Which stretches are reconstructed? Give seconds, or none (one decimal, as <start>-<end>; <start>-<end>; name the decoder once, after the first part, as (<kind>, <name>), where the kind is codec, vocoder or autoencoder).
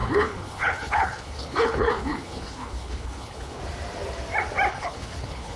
0.0-3.6 (codec, HILCodec); 4.7-5.6